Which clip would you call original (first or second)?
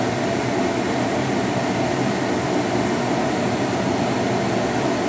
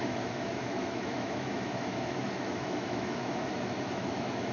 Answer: first